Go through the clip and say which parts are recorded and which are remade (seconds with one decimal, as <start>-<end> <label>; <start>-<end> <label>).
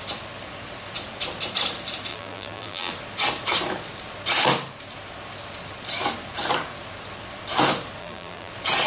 0.0-2.1 recorded; 2.1-2.9 remade; 2.9-8.0 recorded; 8.0-8.5 remade; 8.5-8.9 recorded